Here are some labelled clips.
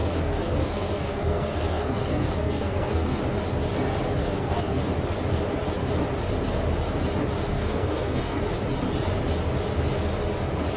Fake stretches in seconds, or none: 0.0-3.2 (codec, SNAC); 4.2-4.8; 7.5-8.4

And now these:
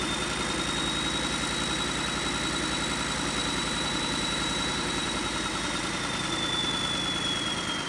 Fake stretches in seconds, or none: 3.4-6.3 (vocoder, BigVGAN v2)

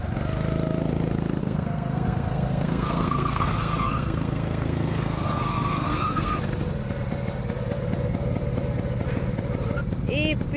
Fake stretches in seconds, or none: 1.4-6.4 (codec, SNAC)

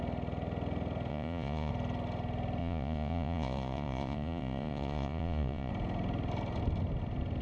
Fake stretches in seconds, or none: 1.1-1.7 (vocoder, Vocos); 2.6-5.7

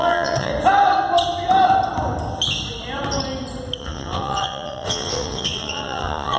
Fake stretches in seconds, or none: 0.0-0.5 (vocoder, WaveNeXt); 3.8-6.4

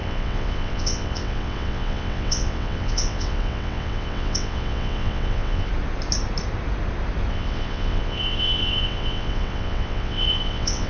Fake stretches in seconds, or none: 0.0-5.7 (vocoder, WaveNeXt); 7.3-10.9

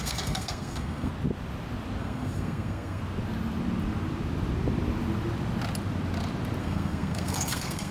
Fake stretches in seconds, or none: 0.0-1.1 (codec, SNAC); 2.0-3.0; 6.6-7.9

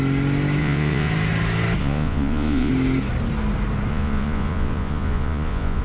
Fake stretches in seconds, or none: 0.6-1.1 (vocoder, Vocos); 1.8-2.7; 3.9-5.8